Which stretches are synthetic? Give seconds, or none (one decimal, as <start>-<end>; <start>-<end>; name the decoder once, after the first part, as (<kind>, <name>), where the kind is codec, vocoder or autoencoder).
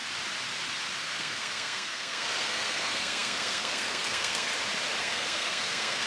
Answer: 1.0-4.5 (codec, SNAC); 5.0-6.1